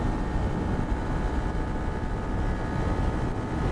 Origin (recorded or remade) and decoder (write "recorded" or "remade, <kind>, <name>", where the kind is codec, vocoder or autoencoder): recorded